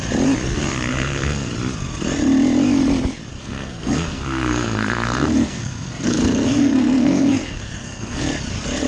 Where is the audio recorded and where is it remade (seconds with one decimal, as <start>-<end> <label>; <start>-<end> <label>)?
0.0-0.9 recorded; 0.9-1.5 remade; 1.5-3.3 recorded; 3.3-8.2 remade; 8.2-8.9 recorded